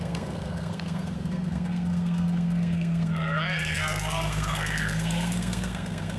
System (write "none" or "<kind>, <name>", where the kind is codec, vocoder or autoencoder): codec, SNAC